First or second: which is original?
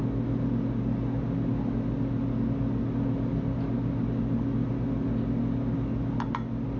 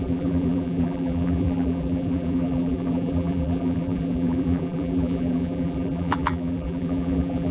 first